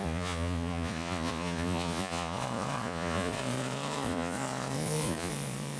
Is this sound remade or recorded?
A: remade